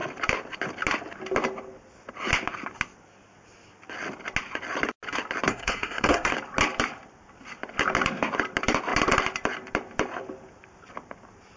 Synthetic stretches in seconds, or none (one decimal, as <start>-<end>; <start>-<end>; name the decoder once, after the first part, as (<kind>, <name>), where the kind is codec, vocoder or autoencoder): 5.5-6.3 (codec, SNAC)